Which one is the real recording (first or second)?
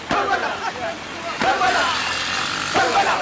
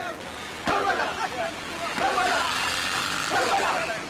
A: first